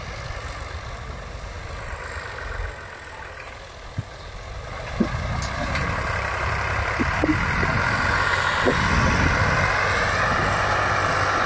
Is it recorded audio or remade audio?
recorded